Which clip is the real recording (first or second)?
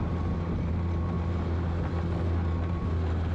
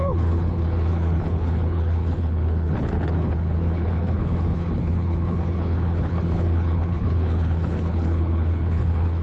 first